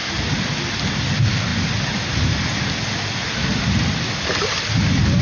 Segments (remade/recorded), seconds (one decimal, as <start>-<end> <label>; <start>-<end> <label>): 0.0-5.2 recorded